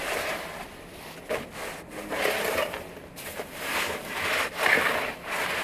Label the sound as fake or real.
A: real